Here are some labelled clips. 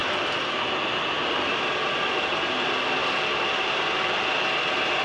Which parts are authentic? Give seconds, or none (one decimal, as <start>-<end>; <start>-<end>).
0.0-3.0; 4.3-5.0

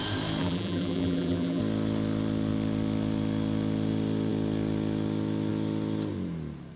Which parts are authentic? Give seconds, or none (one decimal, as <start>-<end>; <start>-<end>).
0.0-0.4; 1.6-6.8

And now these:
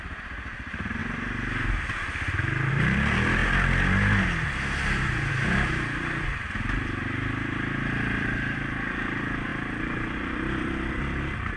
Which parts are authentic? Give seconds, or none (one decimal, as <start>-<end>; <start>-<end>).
1.0-2.7; 3.4-5.3

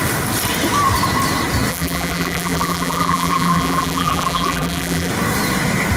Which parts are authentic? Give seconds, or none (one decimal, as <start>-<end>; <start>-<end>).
0.0-1.7; 5.1-6.0

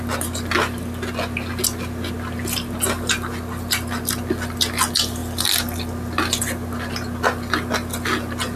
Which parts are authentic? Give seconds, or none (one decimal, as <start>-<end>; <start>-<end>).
0.0-8.6